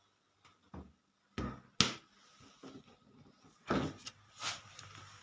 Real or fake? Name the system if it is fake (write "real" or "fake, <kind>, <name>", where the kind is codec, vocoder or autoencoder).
real